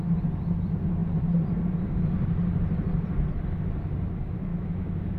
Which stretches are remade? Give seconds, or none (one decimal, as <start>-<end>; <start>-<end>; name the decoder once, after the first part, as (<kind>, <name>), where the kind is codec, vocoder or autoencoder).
4.5-5.2 (autoencoder, DAC-VAE)